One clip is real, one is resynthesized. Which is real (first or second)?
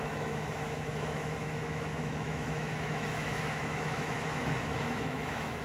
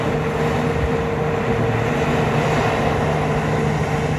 second